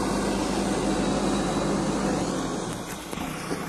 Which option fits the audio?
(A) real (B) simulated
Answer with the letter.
A